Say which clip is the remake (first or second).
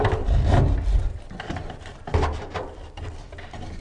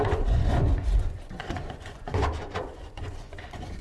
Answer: second